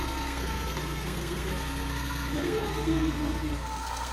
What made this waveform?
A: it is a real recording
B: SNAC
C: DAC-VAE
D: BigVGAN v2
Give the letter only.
B